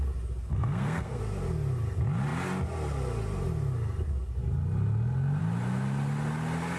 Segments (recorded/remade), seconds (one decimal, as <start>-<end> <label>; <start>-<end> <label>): 0.0-0.5 recorded; 0.5-1.2 remade; 1.2-6.8 recorded